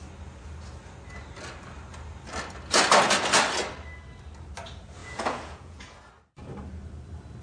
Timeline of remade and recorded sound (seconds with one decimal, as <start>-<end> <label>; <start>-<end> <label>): 0.0-5.0 recorded; 5.0-6.0 remade; 6.0-7.4 recorded